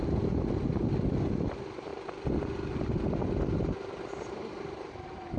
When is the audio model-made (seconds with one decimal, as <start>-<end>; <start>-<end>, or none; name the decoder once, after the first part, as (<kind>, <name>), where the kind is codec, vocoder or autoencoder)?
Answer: none